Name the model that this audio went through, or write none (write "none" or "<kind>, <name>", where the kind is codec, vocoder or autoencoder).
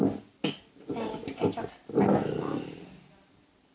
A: none